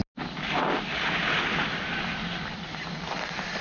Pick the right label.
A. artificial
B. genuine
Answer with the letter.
B